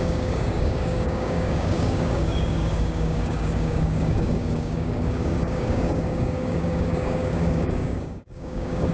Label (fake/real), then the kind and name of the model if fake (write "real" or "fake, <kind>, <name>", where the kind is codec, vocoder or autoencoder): fake, codec, DAC